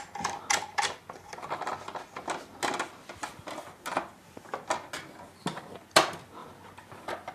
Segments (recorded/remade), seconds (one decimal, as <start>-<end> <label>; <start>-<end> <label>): 0.0-7.3 recorded